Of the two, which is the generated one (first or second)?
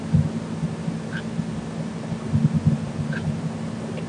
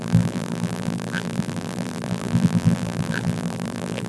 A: second